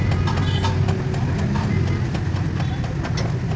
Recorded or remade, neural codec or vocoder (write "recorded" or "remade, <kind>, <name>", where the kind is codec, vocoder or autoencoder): recorded